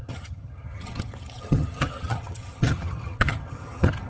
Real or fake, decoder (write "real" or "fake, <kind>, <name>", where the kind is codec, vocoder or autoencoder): fake, vocoder, HiFi-GAN